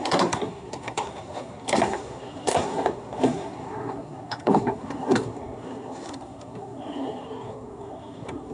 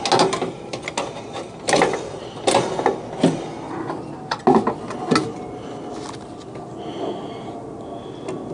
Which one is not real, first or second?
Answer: first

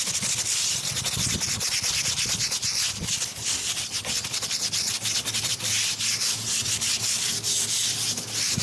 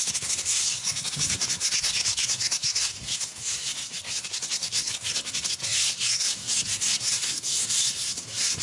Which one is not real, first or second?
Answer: second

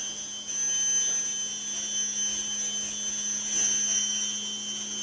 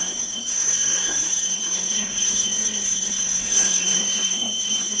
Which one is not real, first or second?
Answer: second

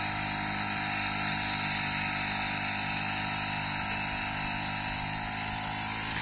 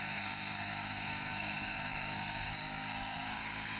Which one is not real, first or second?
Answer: second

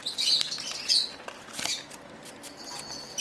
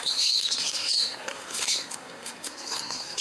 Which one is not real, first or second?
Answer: second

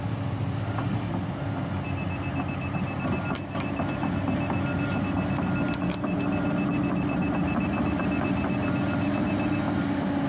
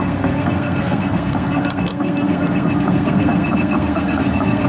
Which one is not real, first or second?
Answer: second